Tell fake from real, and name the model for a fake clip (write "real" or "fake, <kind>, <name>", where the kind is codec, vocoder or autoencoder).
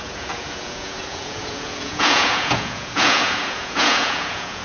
fake, vocoder, Vocos